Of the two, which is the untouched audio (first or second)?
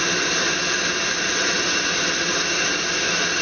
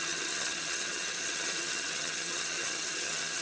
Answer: first